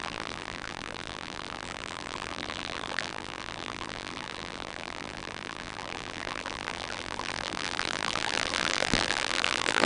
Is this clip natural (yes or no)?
no